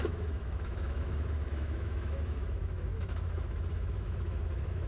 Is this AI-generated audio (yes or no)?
yes